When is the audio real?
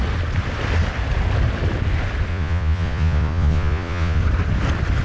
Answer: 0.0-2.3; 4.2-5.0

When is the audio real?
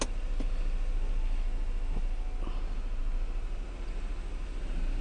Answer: 0.0-5.0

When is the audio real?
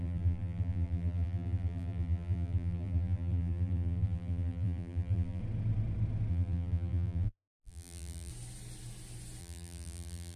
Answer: 5.4-6.3; 8.3-9.4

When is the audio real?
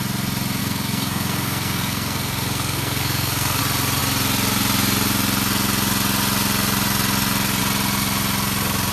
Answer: 0.0-0.6; 3.6-8.9